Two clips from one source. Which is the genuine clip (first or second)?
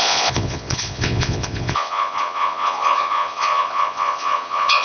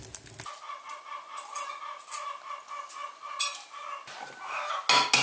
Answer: second